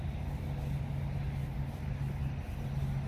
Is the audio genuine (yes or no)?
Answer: yes